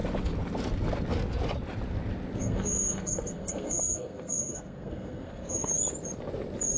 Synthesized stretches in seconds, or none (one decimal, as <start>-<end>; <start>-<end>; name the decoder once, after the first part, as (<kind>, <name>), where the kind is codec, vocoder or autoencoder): 2.4-5.7 (codec, SNAC)